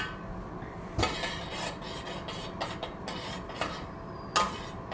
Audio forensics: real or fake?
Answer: real